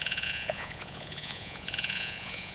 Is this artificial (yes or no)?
yes